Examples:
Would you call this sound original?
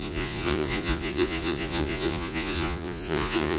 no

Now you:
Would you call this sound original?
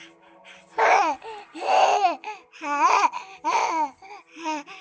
yes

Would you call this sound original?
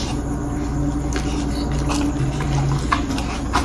yes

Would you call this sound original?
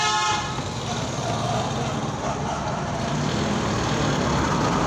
yes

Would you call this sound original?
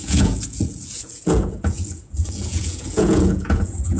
no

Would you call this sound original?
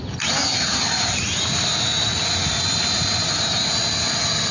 yes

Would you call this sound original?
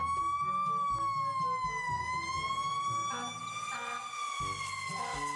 yes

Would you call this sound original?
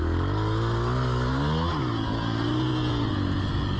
yes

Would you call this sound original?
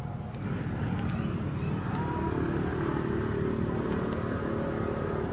yes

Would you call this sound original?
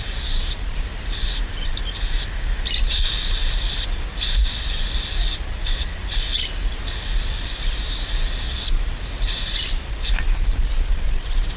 yes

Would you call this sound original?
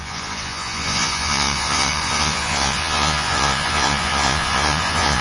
no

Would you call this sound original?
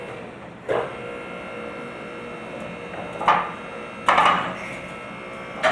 yes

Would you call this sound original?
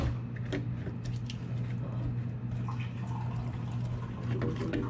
yes